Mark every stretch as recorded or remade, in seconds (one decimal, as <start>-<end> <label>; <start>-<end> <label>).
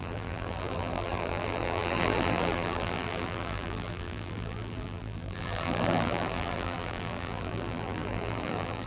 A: 0.0-8.9 remade